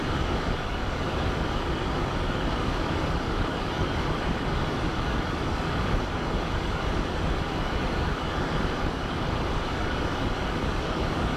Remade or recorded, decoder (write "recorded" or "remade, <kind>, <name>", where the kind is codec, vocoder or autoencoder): remade, codec, DAC